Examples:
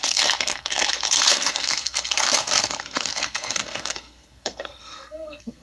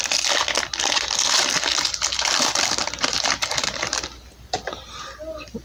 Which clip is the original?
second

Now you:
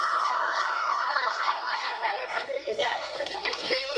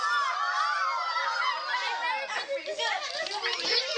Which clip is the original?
second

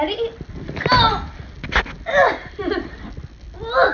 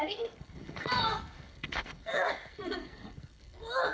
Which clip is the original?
first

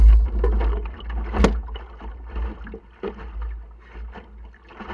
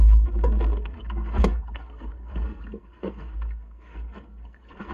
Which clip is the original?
first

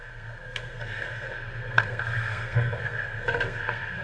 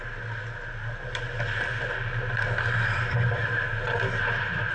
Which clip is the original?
second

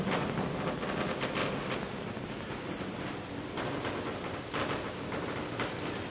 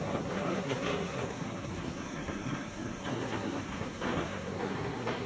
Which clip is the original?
first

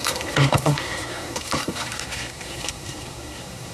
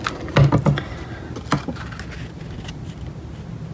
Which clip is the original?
second